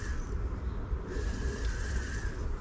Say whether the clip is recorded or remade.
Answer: recorded